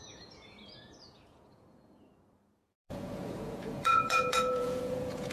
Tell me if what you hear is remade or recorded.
remade